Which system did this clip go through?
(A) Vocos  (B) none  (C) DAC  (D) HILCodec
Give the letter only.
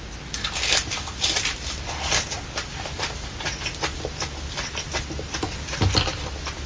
B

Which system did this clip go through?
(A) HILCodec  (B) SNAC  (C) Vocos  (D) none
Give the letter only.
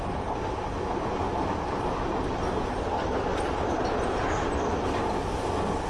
D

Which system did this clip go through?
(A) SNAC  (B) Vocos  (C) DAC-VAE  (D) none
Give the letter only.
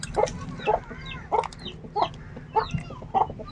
D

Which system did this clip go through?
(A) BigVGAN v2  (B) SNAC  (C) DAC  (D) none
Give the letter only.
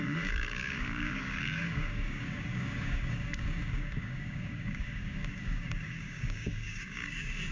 C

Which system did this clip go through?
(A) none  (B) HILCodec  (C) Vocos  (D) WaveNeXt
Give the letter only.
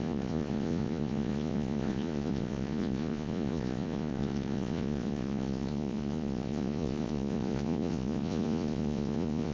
C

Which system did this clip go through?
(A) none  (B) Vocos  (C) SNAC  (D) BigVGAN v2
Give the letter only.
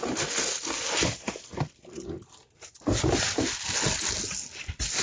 A